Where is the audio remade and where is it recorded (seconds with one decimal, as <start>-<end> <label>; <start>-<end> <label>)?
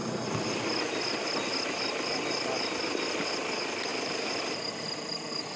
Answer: 0.0-5.6 recorded